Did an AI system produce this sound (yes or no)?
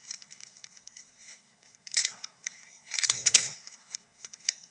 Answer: yes